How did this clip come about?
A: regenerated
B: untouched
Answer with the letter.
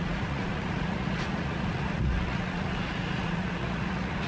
A